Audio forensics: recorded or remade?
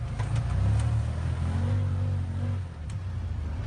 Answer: recorded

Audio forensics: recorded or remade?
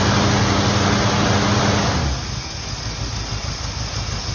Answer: recorded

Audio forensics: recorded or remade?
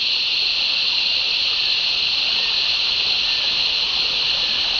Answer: remade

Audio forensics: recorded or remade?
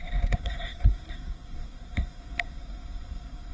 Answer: remade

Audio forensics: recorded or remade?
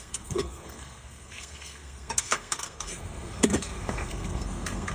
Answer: remade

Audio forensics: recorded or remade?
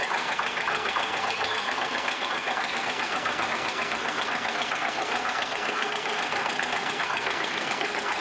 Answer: remade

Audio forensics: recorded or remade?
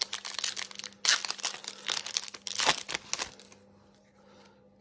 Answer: recorded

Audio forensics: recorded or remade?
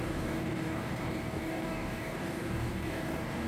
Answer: remade